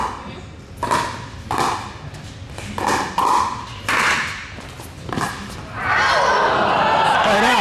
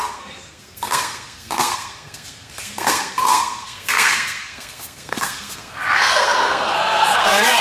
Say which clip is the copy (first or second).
second